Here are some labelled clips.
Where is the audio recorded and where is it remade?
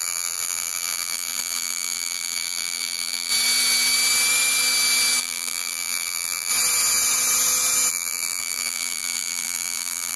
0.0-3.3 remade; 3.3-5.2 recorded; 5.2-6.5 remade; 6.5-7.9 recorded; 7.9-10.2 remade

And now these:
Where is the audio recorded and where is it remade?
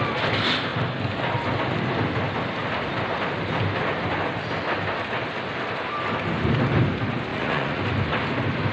0.0-7.3 recorded; 7.3-7.8 remade; 7.8-8.7 recorded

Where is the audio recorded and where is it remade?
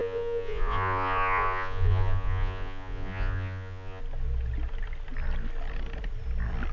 0.0-4.0 remade; 4.0-6.7 recorded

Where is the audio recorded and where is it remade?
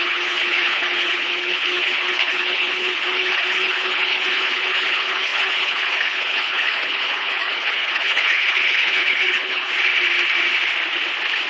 0.0-9.7 remade; 9.7-11.5 recorded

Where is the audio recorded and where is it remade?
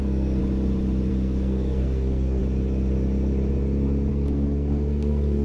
0.0-0.4 remade; 0.4-1.1 recorded; 1.1-2.4 remade; 2.4-4.1 recorded; 4.1-5.4 remade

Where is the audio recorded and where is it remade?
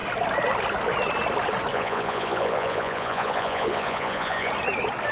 0.0-1.7 recorded; 1.7-4.5 remade; 4.5-5.1 recorded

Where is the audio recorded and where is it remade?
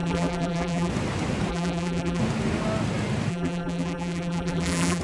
0.0-0.9 remade; 0.9-1.5 recorded; 1.5-2.2 remade; 2.2-3.3 recorded; 3.3-5.0 remade